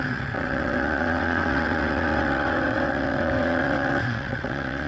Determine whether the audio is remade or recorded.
remade